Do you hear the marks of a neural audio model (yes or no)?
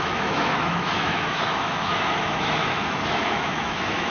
yes